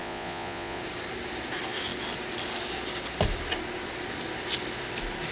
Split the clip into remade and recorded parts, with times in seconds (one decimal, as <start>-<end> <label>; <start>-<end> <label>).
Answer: 0.0-0.8 remade; 0.8-5.3 recorded